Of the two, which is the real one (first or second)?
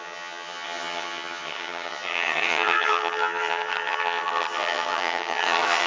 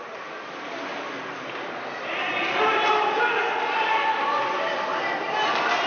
second